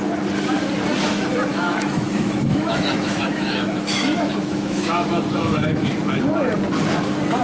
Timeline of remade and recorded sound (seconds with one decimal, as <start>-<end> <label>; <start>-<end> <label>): 0.0-1.5 recorded; 1.5-5.9 remade; 5.9-7.4 recorded